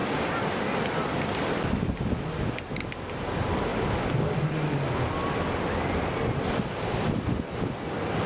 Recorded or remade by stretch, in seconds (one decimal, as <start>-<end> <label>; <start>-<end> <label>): 0.0-8.3 recorded